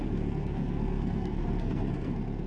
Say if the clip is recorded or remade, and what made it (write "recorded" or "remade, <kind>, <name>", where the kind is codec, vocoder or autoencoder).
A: remade, codec, SNAC